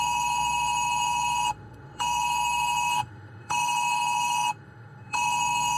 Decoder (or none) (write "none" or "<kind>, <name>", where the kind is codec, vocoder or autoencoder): autoencoder, DAC-VAE